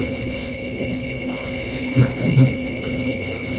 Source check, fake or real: fake